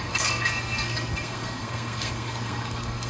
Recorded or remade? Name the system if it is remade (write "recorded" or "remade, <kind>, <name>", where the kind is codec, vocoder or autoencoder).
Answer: remade, codec, SNAC